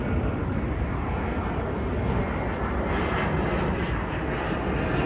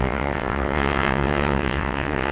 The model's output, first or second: second